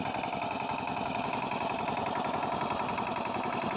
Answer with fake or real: real